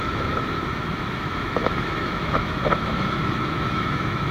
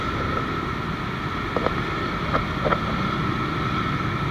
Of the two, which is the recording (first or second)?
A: second